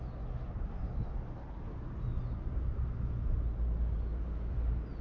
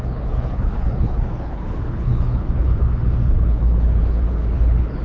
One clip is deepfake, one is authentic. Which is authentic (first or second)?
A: first